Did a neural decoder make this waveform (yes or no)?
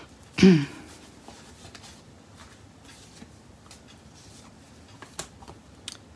no